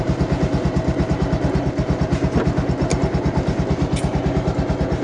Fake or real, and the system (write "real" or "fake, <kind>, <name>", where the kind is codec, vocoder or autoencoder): real